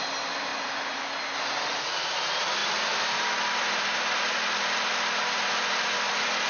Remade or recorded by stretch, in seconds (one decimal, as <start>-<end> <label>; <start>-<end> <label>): 0.0-6.5 recorded